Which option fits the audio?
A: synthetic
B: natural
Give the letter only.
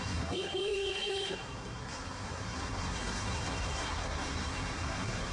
A